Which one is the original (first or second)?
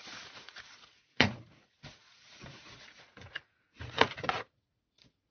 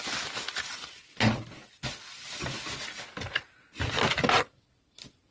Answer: second